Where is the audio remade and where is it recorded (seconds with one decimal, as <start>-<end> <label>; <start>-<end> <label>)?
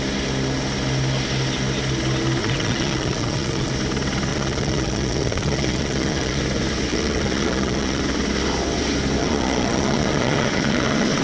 0.0-2.4 recorded; 2.4-3.7 remade; 3.7-4.3 recorded; 4.3-6.4 remade; 6.4-6.9 recorded; 6.9-8.0 remade; 8.0-9.2 recorded; 9.2-11.2 remade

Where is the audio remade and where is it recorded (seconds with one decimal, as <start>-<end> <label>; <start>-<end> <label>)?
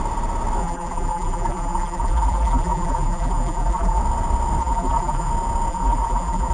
0.0-0.6 recorded; 0.6-4.0 remade; 4.0-4.6 recorded; 4.6-5.3 remade; 5.3-5.7 recorded; 5.7-6.5 remade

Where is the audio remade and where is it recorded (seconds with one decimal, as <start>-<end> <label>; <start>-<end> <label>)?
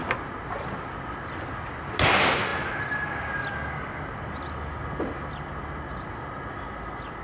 0.0-7.2 recorded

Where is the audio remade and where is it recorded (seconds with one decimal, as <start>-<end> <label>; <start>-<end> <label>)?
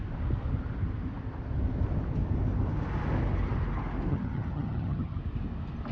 0.0-4.1 recorded; 4.1-5.2 remade; 5.2-5.9 recorded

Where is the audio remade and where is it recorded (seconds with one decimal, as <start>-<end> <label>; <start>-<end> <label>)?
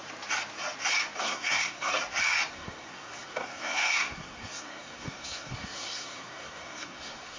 0.0-1.2 recorded; 1.2-1.9 remade; 1.9-2.5 recorded; 2.5-7.4 remade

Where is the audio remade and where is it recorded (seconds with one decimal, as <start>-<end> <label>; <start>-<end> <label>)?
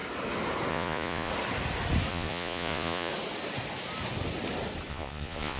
0.0-0.7 recorded; 0.7-1.3 remade; 1.3-2.1 recorded; 2.1-3.1 remade; 3.1-4.9 recorded; 4.9-5.6 remade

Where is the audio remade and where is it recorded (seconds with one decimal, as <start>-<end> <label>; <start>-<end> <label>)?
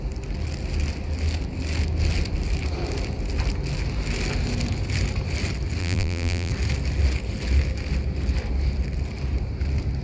0.0-5.8 recorded; 5.8-6.5 remade; 6.5-10.0 recorded